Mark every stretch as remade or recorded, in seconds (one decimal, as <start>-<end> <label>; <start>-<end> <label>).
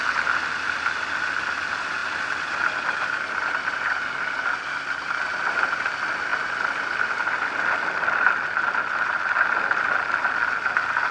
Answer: 0.0-11.1 recorded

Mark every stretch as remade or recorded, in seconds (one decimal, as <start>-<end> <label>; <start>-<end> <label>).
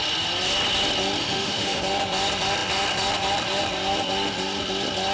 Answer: 0.0-1.2 recorded; 1.2-1.8 remade; 1.8-5.1 recorded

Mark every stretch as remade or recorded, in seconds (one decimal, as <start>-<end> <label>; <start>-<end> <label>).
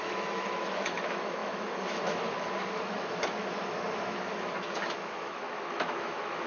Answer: 0.0-6.5 remade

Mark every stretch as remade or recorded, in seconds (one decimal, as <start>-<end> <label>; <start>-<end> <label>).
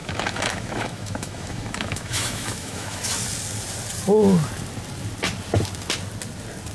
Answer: 0.0-3.0 remade; 3.0-6.7 recorded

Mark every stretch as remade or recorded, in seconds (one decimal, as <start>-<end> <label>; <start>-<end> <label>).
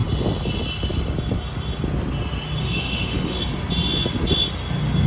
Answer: 0.0-2.6 recorded; 2.6-3.4 remade; 3.4-5.1 recorded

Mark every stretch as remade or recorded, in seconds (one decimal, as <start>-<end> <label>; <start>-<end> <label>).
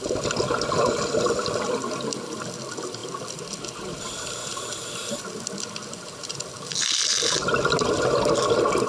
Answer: 0.0-8.9 recorded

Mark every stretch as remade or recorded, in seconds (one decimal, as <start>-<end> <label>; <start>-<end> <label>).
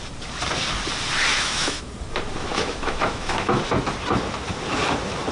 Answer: 0.0-1.3 recorded; 1.3-1.9 remade; 1.9-2.5 recorded; 2.5-3.6 remade; 3.6-5.3 recorded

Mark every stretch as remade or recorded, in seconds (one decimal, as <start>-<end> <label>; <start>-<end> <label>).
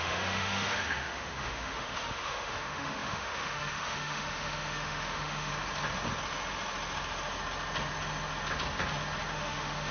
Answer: 0.0-5.5 remade; 5.5-9.3 recorded; 9.3-9.9 remade